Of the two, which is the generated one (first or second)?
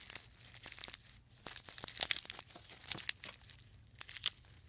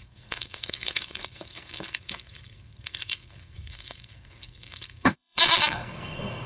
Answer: second